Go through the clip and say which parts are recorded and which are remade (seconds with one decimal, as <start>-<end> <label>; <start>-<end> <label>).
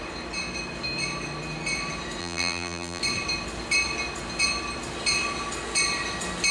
0.0-2.2 recorded; 2.2-3.0 remade; 3.0-6.5 recorded